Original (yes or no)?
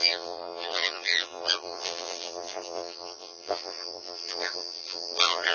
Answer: no